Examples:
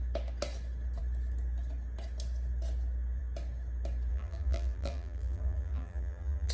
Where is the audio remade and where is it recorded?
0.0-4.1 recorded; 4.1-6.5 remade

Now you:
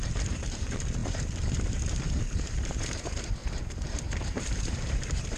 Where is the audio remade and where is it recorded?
0.0-5.4 remade

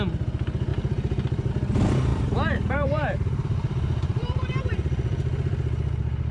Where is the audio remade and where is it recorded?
0.0-0.7 recorded; 0.7-1.5 remade; 1.5-2.1 recorded; 2.1-4.6 remade; 4.6-6.3 recorded

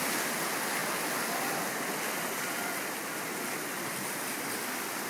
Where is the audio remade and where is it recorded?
0.0-5.1 recorded

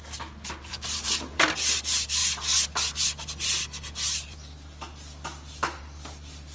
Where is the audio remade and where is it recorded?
0.0-0.7 recorded; 0.7-1.4 remade; 1.4-6.5 recorded